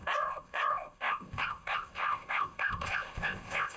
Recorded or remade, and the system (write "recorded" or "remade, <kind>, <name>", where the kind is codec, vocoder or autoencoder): remade, codec, ZipCodec